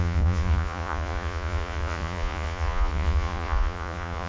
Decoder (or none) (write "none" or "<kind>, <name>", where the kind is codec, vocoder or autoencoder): vocoder, Vocos